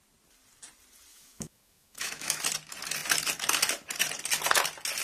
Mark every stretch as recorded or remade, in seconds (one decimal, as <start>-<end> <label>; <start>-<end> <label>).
0.0-1.1 recorded; 1.1-2.4 remade; 2.4-5.0 recorded